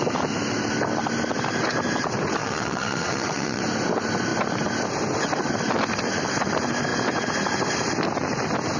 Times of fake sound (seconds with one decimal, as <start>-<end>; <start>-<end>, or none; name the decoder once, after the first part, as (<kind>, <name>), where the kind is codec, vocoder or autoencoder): 2.4-3.6 (vocoder, WaveNeXt)